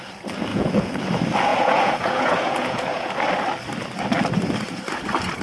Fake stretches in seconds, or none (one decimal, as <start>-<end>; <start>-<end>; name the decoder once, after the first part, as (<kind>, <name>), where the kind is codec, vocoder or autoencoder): 0.5-1.0 (vocoder, Vocos); 1.5-3.1